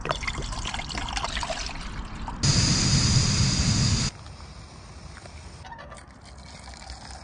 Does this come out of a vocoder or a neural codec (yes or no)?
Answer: no